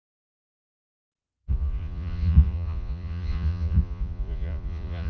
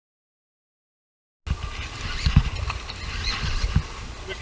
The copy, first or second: first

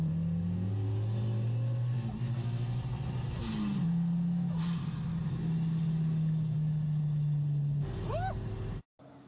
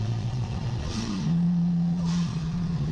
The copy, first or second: second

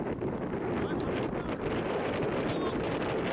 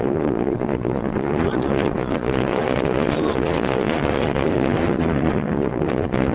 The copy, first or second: second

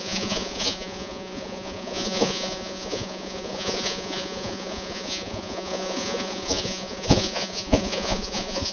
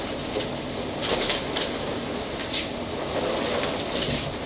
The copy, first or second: first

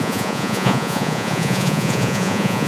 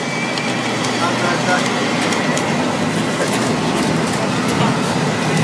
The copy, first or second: first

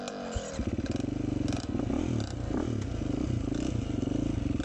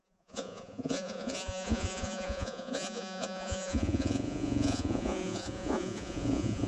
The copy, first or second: second